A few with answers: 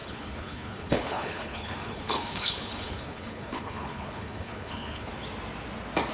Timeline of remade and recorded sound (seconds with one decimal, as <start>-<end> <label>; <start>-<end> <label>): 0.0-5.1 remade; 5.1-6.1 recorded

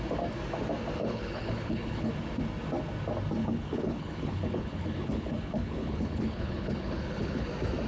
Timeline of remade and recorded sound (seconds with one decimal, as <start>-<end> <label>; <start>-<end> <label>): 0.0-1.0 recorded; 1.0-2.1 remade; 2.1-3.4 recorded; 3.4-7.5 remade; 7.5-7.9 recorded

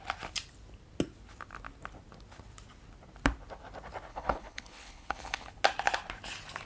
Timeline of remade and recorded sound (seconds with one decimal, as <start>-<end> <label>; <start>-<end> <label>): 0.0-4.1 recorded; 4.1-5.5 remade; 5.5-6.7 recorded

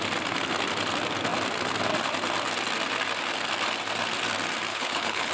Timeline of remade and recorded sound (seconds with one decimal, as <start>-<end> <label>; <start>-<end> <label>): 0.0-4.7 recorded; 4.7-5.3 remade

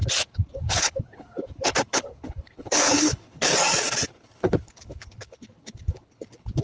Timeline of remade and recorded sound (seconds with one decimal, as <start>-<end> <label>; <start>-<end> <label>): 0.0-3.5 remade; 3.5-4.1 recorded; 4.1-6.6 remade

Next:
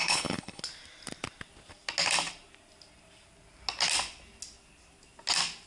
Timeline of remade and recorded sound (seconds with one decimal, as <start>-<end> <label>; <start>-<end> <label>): 0.0-0.6 remade; 0.6-5.7 recorded